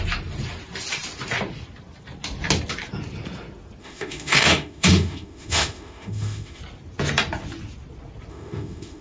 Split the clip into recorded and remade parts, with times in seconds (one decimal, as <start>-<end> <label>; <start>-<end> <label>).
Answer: 0.0-3.8 recorded; 3.8-6.6 remade; 6.6-8.3 recorded; 8.3-9.0 remade